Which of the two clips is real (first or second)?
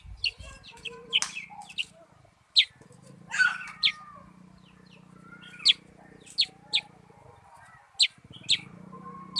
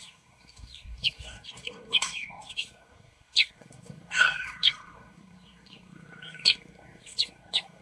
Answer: first